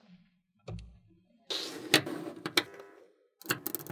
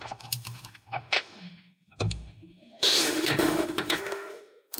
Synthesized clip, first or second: second